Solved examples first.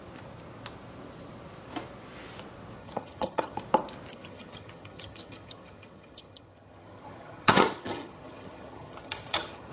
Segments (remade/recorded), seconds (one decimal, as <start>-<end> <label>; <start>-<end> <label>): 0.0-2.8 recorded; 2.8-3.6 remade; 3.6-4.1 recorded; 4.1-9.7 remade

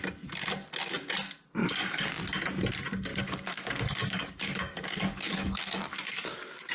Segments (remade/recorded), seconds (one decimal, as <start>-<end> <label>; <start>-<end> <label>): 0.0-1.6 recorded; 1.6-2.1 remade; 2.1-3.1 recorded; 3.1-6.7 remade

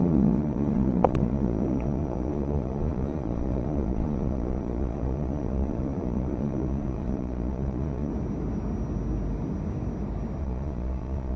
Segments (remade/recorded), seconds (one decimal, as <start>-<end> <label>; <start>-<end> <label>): 0.0-8.1 remade; 8.1-10.4 recorded; 10.4-11.4 remade

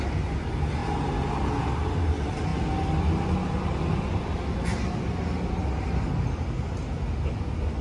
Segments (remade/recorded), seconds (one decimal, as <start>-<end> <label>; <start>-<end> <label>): 0.0-7.8 recorded